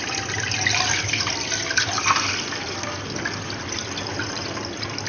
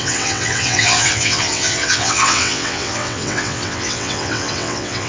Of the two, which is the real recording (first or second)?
first